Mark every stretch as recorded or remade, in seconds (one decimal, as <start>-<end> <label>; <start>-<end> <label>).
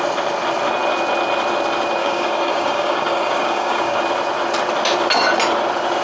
0.0-2.0 recorded; 2.0-4.0 remade; 4.0-6.0 recorded